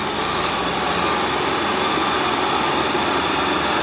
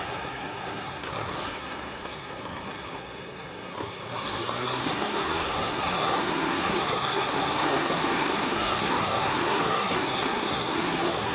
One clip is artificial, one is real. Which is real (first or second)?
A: first